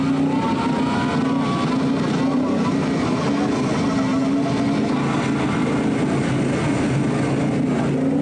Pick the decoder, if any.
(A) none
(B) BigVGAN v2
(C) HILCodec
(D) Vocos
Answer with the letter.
A